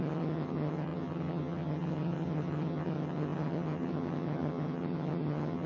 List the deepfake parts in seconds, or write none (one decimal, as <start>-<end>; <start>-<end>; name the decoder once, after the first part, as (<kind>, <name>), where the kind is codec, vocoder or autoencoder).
0.0-5.7 (vocoder, HiFi-GAN)